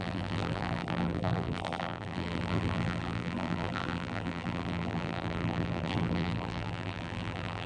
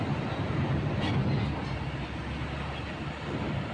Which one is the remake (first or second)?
first